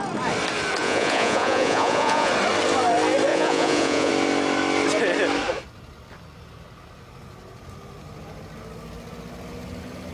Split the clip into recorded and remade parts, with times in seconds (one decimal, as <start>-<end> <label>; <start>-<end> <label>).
0.0-0.8 recorded; 0.8-2.3 remade; 2.3-3.3 recorded; 3.3-4.1 remade; 4.1-10.1 recorded